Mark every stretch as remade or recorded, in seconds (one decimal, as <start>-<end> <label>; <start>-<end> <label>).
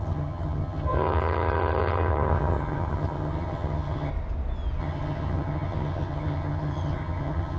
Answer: 0.0-4.1 remade; 4.1-4.8 recorded; 4.8-7.6 remade